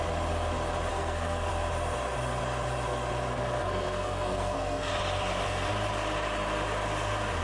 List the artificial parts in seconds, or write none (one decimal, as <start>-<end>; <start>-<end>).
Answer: 0.9-1.5; 3.3-4.9